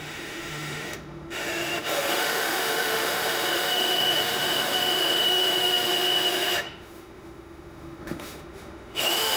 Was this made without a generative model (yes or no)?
no